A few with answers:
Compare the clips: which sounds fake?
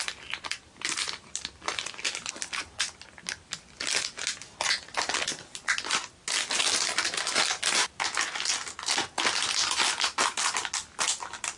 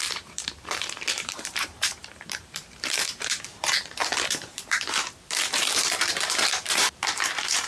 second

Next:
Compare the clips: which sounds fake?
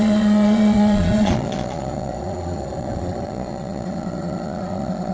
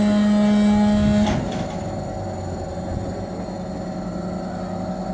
first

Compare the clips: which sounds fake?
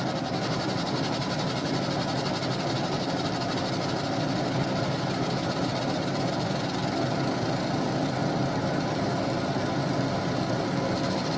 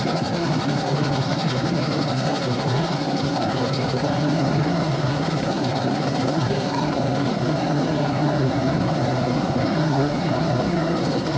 second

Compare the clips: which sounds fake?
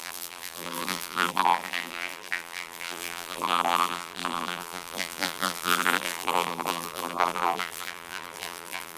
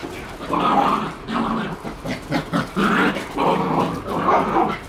first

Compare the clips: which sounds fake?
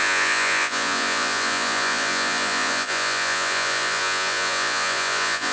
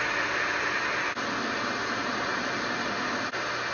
first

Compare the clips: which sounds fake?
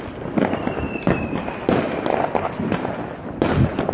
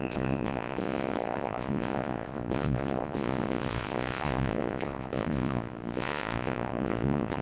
second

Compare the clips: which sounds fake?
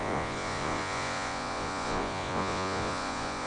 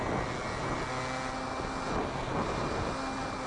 first